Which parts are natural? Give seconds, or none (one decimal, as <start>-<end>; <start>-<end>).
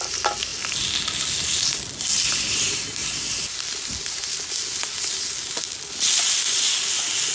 0.0-7.3